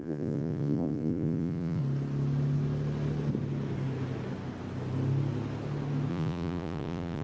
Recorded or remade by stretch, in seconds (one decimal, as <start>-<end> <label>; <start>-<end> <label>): 0.0-1.8 remade; 1.8-6.1 recorded; 6.1-7.2 remade

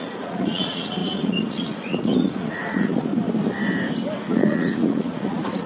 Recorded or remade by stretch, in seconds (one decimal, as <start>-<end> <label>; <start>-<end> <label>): 0.0-3.1 remade; 3.1-4.3 recorded; 4.3-5.7 remade

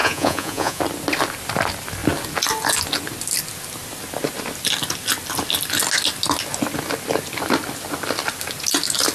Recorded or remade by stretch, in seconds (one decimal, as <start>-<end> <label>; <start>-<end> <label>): 0.0-0.8 remade; 0.8-9.1 recorded

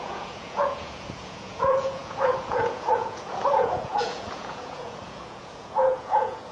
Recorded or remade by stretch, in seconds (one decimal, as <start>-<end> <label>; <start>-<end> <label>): 0.0-6.5 remade

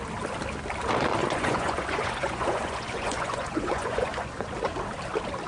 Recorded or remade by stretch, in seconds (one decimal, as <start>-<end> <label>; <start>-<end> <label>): 0.0-1.2 recorded; 1.2-4.5 remade; 4.5-5.5 recorded

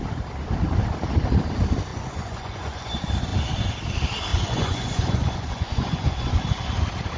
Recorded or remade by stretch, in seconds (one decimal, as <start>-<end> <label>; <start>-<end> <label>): 0.0-1.9 recorded; 1.9-2.9 remade; 2.9-4.3 recorded; 4.3-6.3 remade; 6.3-7.2 recorded